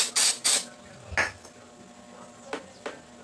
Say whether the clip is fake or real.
real